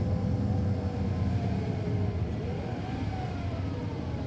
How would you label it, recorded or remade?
recorded